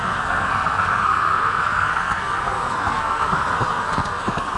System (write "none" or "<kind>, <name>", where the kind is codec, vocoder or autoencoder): codec, SNAC